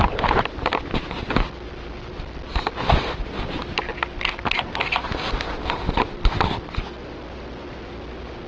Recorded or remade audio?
recorded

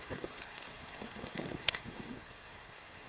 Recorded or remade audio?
remade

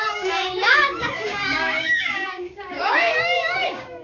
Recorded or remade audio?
remade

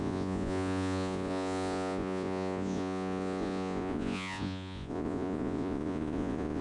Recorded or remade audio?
remade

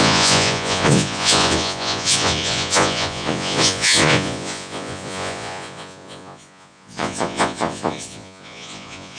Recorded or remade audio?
remade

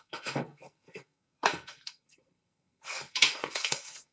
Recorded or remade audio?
remade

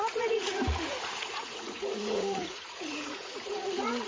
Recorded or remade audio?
remade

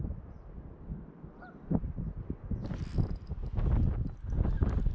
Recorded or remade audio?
recorded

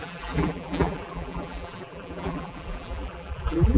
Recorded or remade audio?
remade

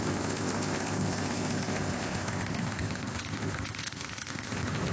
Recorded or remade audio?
remade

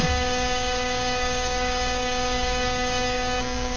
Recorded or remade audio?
remade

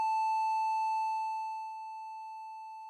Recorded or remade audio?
recorded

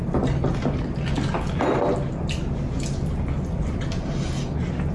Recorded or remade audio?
recorded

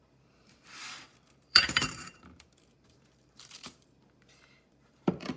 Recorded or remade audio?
remade